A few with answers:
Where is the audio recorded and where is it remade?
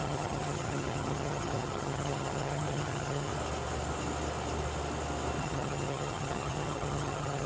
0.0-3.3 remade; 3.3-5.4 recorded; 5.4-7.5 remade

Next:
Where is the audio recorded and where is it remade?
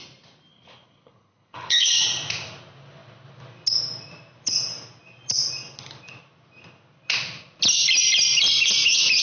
0.0-0.5 recorded; 0.5-2.0 remade; 2.0-9.2 recorded